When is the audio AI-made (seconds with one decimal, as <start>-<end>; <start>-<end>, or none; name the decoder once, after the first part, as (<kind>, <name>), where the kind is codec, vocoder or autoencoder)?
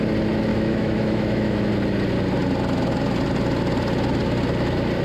0.5-1.7 (autoencoder, DAC-VAE)